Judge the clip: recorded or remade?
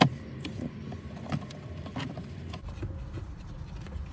remade